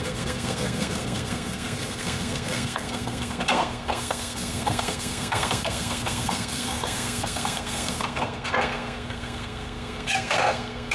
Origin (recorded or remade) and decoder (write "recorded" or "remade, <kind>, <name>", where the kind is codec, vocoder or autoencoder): remade, codec, SNAC